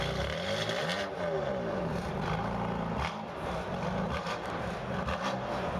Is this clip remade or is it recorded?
recorded